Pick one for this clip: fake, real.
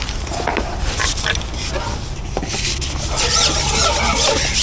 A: real